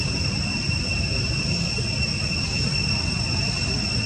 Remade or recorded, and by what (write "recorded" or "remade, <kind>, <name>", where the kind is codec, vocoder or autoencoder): recorded